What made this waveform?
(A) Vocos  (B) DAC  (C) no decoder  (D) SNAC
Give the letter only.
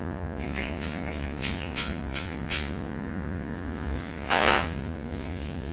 A